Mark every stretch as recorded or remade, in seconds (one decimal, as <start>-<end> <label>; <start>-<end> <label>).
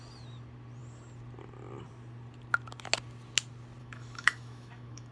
0.0-3.8 recorded; 3.8-5.1 remade